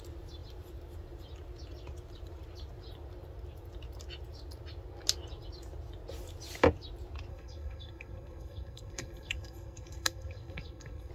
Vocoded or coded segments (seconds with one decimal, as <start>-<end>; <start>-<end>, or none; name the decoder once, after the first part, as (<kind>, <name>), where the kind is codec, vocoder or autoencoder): 7.3-11.1 (codec, SNAC)